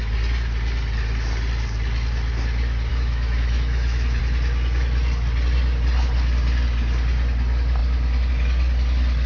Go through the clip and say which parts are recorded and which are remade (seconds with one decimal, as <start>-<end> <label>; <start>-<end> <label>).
0.0-2.9 recorded; 2.9-4.2 remade; 4.2-9.3 recorded

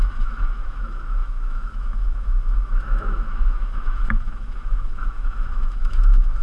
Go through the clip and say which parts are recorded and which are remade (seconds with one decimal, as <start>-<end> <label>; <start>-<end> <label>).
0.0-6.4 remade

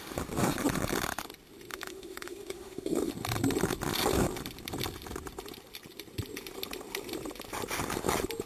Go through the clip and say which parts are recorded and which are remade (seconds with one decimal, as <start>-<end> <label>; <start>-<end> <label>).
0.0-1.7 recorded; 1.7-3.1 remade; 3.1-8.5 recorded

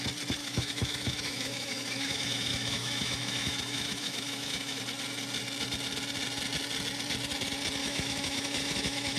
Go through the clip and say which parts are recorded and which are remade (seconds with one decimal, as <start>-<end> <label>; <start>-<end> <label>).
0.0-0.4 recorded; 0.4-4.8 remade; 4.8-7.8 recorded; 7.8-9.2 remade